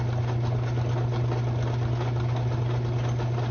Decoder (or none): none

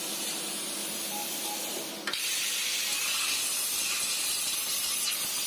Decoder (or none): none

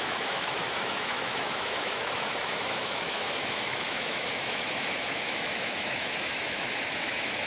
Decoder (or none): autoencoder, DAC-VAE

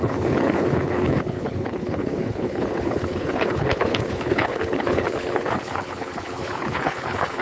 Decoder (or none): codec, HILCodec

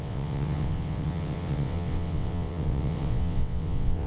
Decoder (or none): vocoder, WaveNeXt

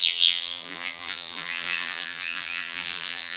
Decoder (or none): vocoder, BigVGAN v2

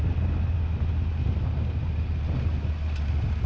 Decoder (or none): none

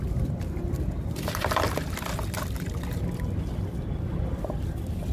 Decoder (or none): none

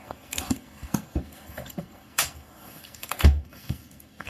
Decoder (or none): codec, SNAC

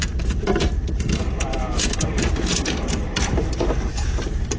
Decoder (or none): vocoder, BigVGAN v2